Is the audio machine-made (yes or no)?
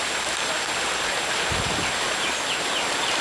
no